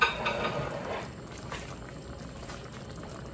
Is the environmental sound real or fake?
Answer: real